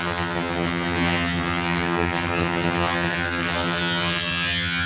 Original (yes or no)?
no